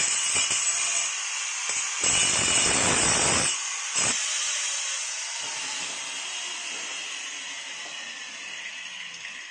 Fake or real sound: real